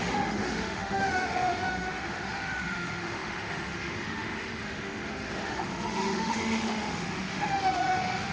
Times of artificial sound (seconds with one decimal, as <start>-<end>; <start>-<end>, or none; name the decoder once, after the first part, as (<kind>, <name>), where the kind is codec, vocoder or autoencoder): 0.0-8.3 (autoencoder, DAC-VAE)